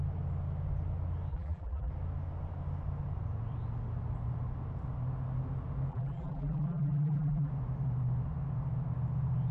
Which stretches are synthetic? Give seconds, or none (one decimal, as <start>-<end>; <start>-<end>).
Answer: 1.3-1.9; 5.9-7.5